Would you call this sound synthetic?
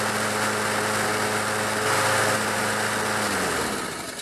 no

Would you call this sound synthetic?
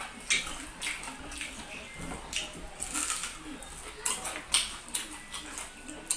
no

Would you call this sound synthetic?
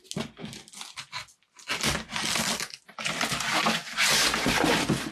no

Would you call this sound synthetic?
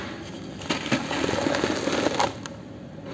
no